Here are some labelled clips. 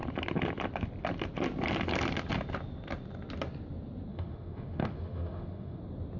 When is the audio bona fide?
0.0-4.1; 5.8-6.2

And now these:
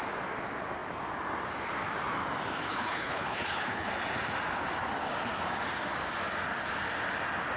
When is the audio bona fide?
0.0-2.7; 3.9-7.6

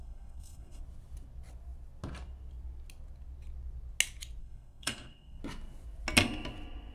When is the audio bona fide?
0.8-4.4; 5.4-6.9

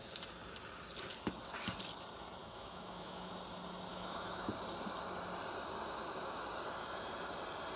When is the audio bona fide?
0.0-2.4; 3.3-3.9; 4.5-7.8